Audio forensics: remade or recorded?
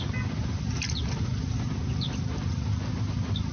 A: recorded